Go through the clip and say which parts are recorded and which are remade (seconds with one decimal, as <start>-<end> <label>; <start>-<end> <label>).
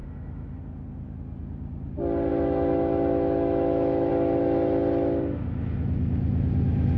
0.0-0.6 remade; 0.6-2.3 recorded; 2.3-4.1 remade; 4.1-7.0 recorded